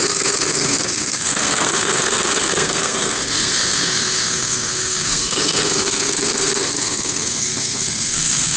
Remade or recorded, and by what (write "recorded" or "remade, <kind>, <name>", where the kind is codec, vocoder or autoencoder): remade, codec, SNAC